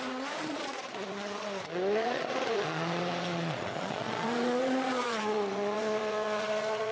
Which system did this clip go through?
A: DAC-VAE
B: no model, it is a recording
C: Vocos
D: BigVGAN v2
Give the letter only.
C